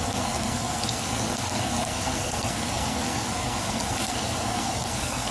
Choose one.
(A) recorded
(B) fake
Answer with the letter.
B